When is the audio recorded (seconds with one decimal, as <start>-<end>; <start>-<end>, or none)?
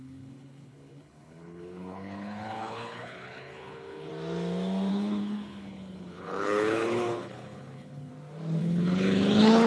4.1-4.9; 8.1-8.6